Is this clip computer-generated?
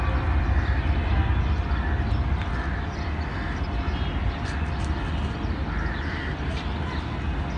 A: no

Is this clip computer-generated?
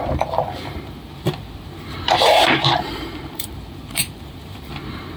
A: yes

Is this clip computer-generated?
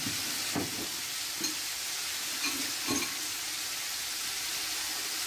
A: no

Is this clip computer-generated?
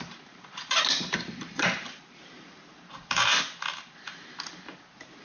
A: yes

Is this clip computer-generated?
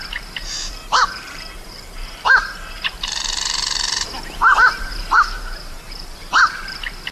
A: yes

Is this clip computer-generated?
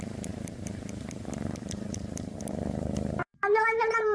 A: yes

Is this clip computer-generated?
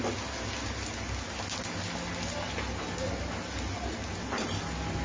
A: no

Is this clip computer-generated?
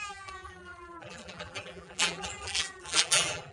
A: yes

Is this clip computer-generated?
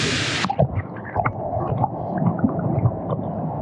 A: no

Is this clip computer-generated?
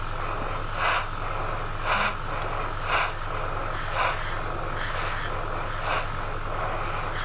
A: no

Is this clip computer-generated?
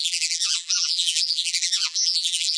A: yes